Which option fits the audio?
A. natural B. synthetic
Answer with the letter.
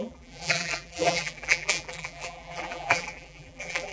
B